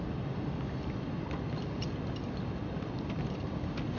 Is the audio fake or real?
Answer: real